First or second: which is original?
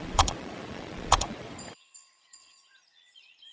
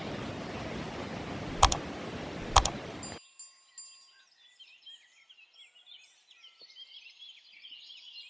second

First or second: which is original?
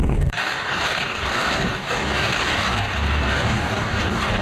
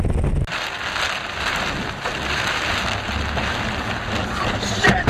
second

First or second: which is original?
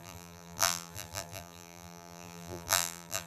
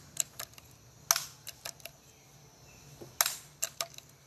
second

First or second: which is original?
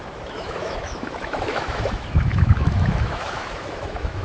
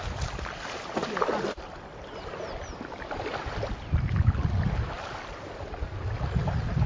second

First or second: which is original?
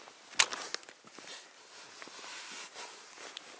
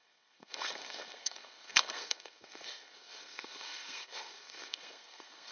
first